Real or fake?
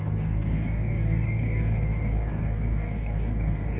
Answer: fake